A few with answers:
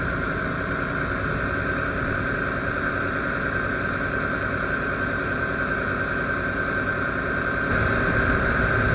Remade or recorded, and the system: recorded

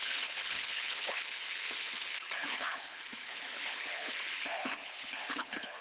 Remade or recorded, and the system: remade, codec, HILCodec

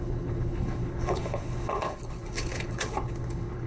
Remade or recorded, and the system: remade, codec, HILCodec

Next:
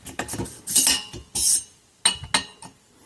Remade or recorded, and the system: recorded